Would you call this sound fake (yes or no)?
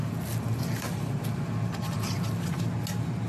no